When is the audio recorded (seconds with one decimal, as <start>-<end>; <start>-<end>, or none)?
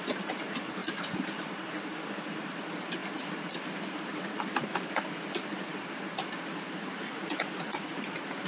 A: 0.0-0.8; 1.5-8.5